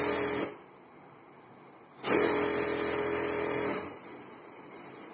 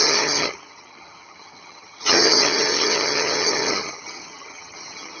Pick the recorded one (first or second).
first